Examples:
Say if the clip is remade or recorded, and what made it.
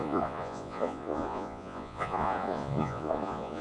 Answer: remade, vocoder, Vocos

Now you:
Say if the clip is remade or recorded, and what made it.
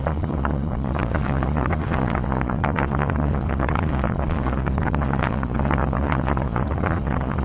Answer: remade, vocoder, Vocos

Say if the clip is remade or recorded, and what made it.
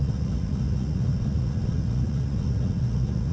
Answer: remade, vocoder, Vocos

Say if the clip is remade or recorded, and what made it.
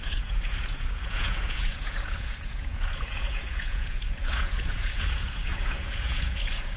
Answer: remade, vocoder, Vocos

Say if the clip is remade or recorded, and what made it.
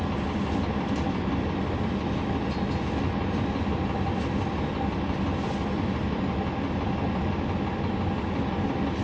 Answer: recorded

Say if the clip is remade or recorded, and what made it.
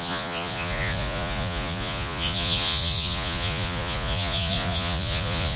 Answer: remade, vocoder, Vocos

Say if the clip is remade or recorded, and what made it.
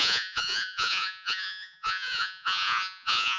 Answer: remade, vocoder, Vocos